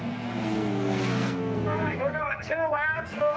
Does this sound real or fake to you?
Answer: fake